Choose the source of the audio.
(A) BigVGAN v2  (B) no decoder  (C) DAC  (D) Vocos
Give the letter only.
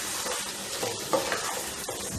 B